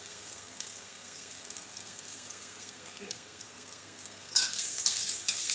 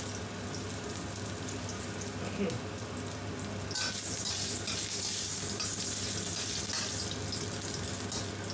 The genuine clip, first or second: second